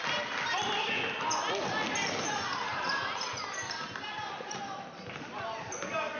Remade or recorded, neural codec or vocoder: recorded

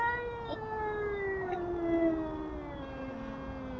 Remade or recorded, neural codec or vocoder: recorded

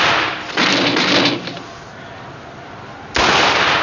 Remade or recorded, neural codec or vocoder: recorded